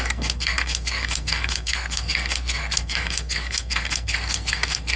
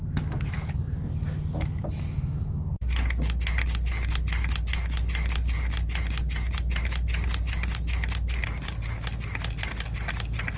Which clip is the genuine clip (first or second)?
second